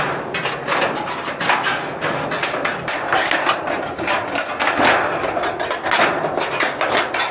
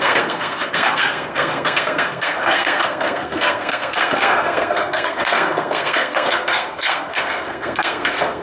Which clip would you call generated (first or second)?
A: second